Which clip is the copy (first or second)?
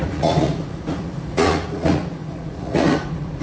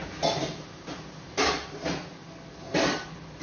first